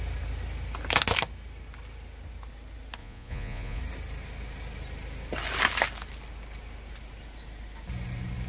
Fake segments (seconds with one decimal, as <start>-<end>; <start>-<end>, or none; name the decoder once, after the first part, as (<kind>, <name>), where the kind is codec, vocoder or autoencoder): 3.0-3.8 (vocoder, Vocos)